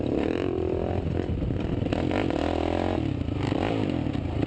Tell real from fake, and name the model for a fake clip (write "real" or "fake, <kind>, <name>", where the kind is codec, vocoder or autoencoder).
real